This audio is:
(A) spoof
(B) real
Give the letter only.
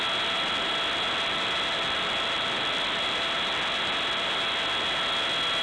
B